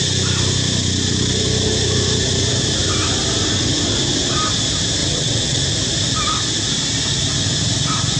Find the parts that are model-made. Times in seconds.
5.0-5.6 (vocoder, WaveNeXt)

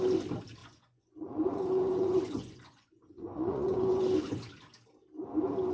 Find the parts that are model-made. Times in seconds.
0.6-4.0 (vocoder, Vocos)

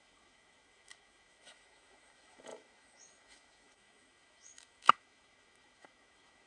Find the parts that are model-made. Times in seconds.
0.0-6.5 (autoencoder, DAC-VAE)